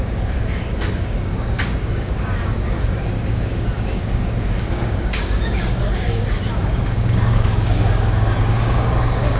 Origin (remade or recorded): remade